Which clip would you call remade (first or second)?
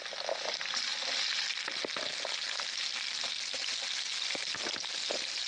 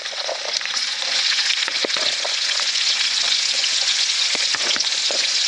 second